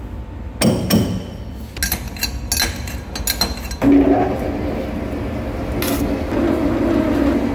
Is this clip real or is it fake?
real